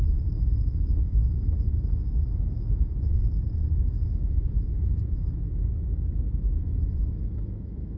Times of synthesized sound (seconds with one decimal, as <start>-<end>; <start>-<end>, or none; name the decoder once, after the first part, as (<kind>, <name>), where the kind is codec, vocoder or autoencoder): 0.0-3.3 (autoencoder, DAC-VAE); 3.9-8.0